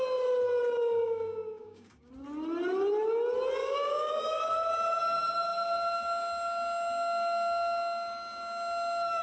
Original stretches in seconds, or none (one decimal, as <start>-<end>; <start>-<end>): 0.0-1.0; 2.1-3.6; 4.5-9.2